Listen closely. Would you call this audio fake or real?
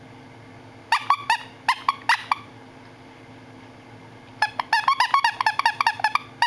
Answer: real